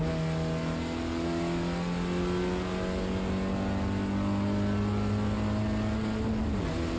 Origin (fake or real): real